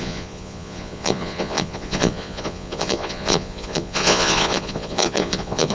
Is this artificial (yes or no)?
yes